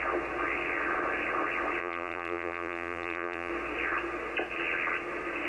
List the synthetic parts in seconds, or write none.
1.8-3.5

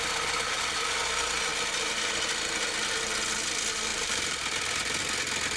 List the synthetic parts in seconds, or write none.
3.9-5.0

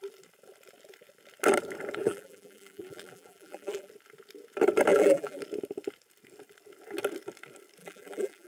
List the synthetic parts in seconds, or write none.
2.0-3.9; 4.9-5.4; 7.8-8.5

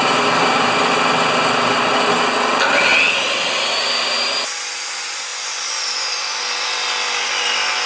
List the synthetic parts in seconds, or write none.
none